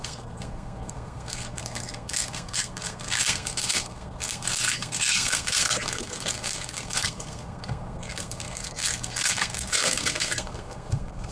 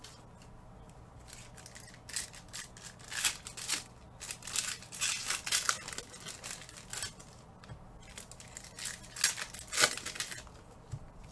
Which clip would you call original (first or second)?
second